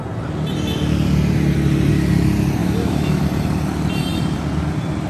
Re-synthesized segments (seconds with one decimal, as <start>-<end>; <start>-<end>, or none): 2.6-3.2